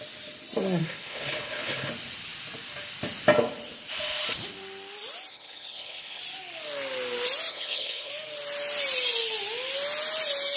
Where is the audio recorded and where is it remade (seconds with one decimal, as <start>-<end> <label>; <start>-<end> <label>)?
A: 0.0-0.8 recorded; 0.8-1.9 remade; 1.9-5.3 recorded; 5.3-6.2 remade; 6.2-7.5 recorded; 7.5-8.1 remade; 8.1-10.6 recorded